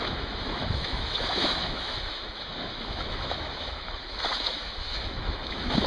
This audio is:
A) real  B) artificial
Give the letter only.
B